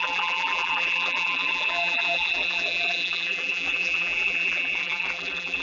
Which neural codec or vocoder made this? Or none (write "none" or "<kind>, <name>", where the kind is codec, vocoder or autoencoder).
vocoder, BigVGAN v2